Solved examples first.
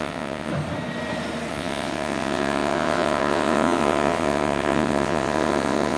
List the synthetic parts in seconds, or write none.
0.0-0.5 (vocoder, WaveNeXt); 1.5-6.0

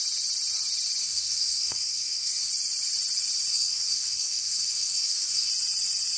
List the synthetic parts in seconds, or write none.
1.0-2.5 (codec, SNAC); 3.5-5.5

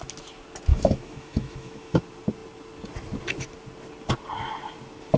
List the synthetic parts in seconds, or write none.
0.7-2.0 (autoencoder, DAC-VAE)

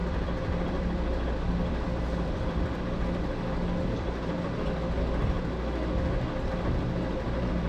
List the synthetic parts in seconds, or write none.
0.0-2.8 (vocoder, BigVGAN v2)

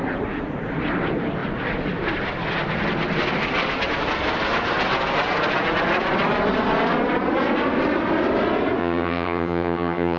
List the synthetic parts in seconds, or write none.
8.8-10.2 (vocoder, HiFi-GAN)

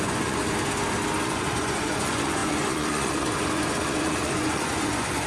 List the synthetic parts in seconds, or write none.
0.0-0.4 (vocoder, Vocos); 1.2-5.3

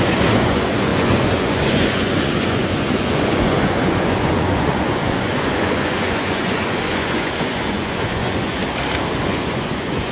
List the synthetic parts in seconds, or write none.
0.0-8.6 (vocoder, Vocos); 9.2-10.1

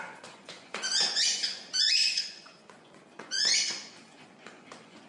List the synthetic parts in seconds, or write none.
0.0-5.1 (vocoder, Vocos)